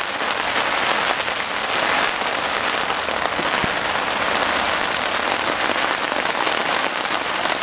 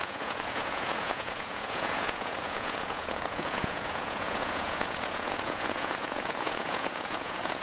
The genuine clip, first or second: first